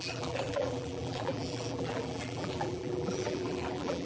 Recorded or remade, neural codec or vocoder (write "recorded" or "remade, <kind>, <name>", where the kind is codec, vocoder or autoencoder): remade, vocoder, BigVGAN v2